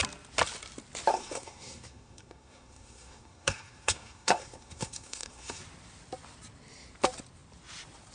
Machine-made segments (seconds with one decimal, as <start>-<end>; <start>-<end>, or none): 1.1-5.6